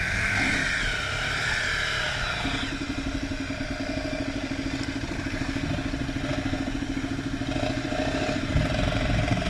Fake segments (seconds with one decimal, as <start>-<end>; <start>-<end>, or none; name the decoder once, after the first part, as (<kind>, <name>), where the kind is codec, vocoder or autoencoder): 0.0-0.6 (vocoder, BigVGAN v2); 1.5-9.5